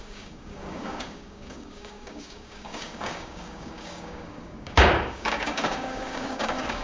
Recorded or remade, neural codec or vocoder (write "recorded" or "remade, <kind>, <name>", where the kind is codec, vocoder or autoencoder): remade, codec, DAC